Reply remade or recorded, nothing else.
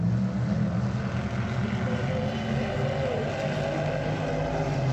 recorded